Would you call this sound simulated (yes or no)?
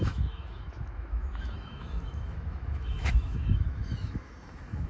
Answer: yes